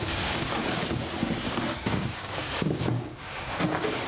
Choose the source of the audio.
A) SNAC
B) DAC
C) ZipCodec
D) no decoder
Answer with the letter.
B